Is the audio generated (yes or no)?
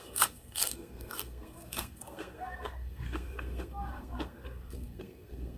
yes